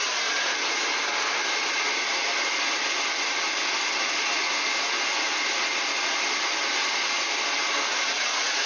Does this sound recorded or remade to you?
recorded